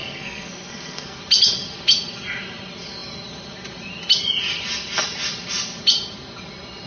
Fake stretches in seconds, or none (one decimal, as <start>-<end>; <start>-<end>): 0.0-1.2